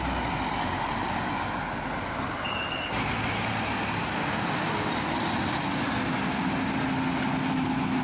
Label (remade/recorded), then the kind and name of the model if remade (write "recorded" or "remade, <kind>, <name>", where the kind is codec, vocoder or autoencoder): recorded